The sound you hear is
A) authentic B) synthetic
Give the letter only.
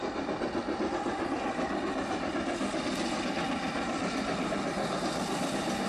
A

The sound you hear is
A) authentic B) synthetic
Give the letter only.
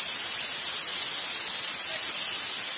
A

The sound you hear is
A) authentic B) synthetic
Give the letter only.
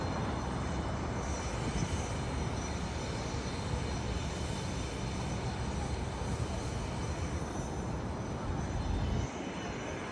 A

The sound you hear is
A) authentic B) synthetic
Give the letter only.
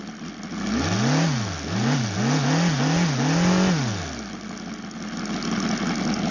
A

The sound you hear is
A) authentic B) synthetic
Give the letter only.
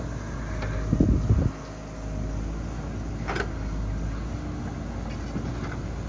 A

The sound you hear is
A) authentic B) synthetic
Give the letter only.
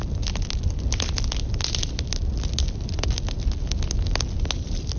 A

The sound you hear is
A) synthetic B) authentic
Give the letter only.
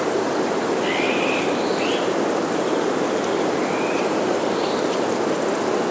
B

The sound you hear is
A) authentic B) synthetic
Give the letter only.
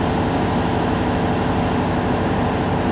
A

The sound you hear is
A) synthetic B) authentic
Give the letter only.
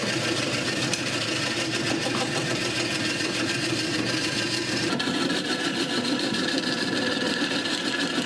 A